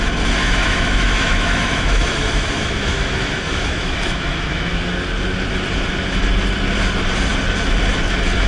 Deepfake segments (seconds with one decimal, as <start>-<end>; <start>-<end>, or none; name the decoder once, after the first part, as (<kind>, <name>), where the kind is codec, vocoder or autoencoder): 0.4-4.7 (autoencoder, DAC-VAE)